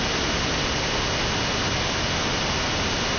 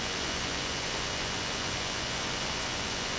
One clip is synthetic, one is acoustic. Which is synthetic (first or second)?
second